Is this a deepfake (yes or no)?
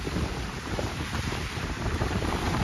yes